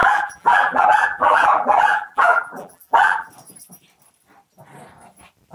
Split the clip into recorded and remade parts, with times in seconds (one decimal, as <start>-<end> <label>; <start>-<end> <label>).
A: 0.0-3.3 remade; 3.3-5.5 recorded